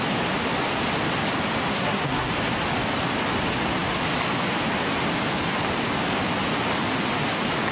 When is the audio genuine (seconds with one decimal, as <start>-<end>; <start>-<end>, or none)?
0.0-1.7; 2.3-7.7